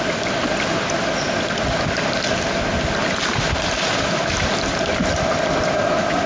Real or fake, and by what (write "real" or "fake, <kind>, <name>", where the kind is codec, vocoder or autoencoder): real